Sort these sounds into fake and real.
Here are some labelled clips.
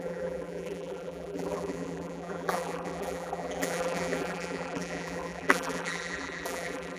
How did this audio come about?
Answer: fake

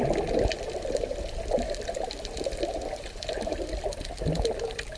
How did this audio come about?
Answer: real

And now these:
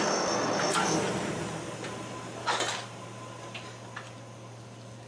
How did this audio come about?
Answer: real